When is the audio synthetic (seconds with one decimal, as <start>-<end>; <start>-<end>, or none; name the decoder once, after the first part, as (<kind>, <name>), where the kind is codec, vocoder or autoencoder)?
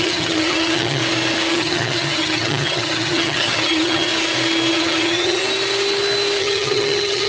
0.0-1.0 (vocoder, HiFi-GAN); 1.5-4.1; 4.7-5.4; 6.4-7.3